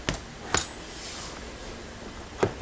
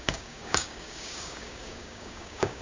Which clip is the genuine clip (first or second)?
first